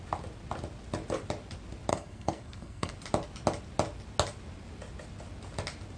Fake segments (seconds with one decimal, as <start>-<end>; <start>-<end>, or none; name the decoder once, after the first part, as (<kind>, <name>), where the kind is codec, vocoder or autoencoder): 1.9-2.9 (codec, SNAC)